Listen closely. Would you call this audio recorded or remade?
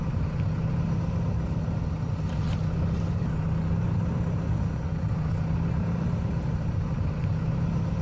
recorded